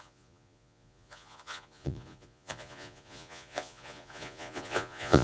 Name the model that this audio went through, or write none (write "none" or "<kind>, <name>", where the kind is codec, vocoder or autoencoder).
vocoder, Vocos